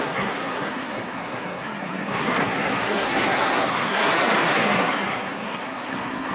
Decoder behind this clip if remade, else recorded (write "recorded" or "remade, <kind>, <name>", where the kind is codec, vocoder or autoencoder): remade, codec, SNAC